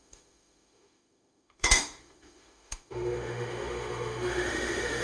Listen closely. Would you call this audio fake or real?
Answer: fake